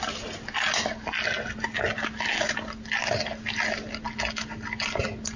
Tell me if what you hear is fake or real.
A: real